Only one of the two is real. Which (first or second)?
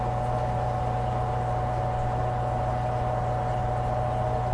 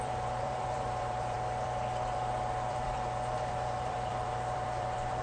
first